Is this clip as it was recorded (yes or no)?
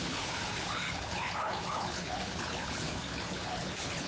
no